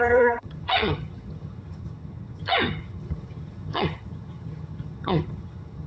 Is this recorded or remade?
remade